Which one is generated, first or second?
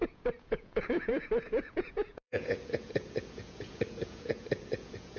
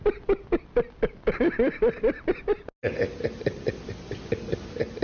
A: first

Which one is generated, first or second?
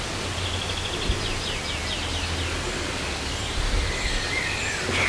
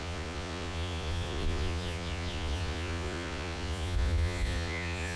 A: second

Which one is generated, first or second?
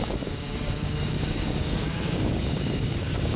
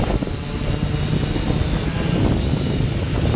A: first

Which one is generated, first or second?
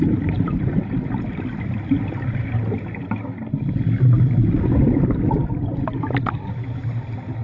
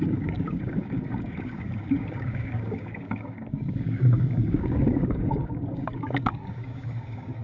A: second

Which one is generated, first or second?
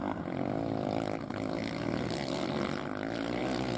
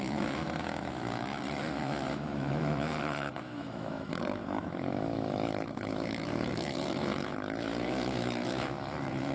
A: second